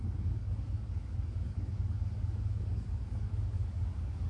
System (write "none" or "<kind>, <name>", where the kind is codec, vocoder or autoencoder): codec, DAC